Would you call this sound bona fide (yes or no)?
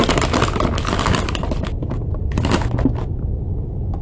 yes